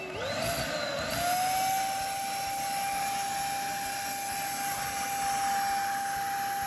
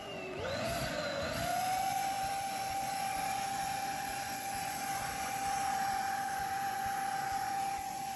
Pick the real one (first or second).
first